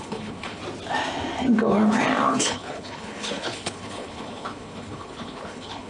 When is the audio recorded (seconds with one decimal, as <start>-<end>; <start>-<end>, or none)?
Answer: 0.6-2.3